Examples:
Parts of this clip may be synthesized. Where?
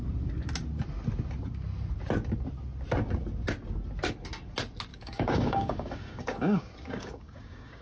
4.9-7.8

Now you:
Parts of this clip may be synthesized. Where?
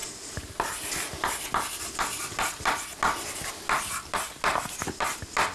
none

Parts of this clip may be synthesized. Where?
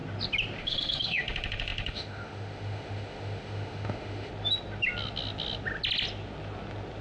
0.6-4.3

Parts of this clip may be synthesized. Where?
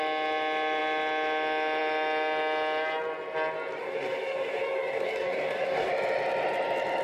3.8-5.9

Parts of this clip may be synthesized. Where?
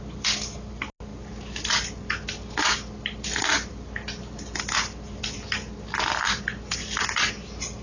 none